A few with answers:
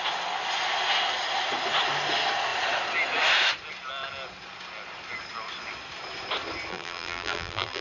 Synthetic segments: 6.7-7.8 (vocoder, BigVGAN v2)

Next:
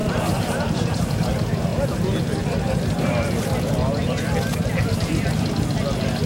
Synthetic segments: 0.0-1.2 (vocoder, BigVGAN v2); 1.7-5.5

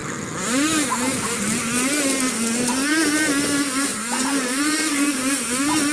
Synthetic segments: 3.9-5.3 (vocoder, BigVGAN v2)